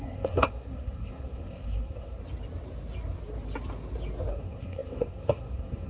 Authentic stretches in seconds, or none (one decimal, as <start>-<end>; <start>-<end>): 2.2-4.3